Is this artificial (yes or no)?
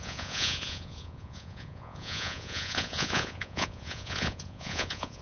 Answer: yes